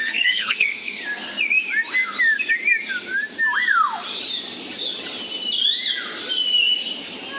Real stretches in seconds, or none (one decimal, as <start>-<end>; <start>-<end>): 1.0-7.4